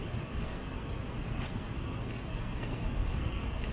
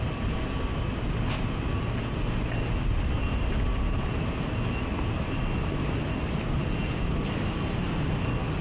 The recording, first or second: second